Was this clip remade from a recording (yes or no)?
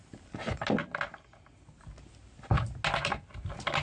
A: no